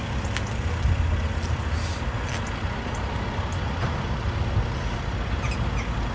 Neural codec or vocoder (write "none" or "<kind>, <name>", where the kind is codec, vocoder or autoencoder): none